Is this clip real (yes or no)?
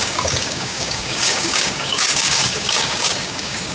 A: no